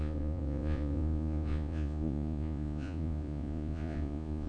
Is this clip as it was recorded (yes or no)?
no